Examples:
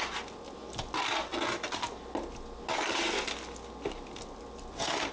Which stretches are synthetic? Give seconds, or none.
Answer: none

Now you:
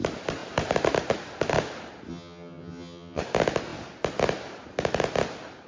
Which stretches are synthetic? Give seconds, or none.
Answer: 2.1-3.2

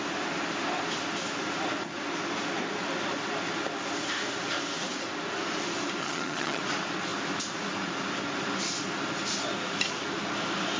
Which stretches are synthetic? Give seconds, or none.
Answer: 6.0-6.6

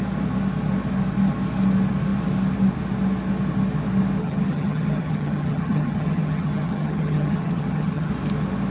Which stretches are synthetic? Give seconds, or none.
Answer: 4.2-8.1

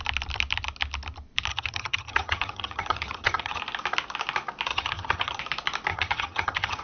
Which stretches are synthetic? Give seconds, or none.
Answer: 1.5-3.6; 4.7-5.4; 5.9-6.8